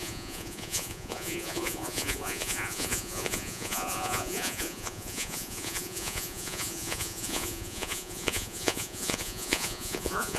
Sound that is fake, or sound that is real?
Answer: fake